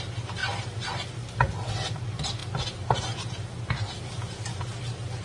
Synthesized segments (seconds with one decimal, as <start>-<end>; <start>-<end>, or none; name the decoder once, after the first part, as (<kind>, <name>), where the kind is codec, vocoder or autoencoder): none